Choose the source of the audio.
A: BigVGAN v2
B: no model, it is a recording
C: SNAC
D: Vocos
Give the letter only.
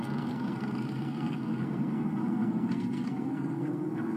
C